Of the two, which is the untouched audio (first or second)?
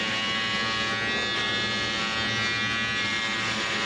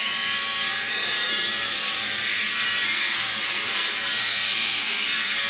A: first